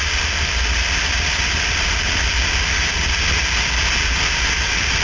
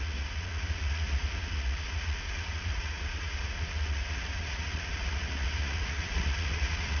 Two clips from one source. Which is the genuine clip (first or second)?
first